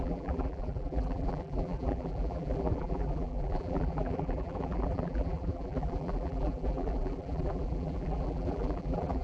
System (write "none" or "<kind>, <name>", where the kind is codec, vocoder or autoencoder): vocoder, BigVGAN v2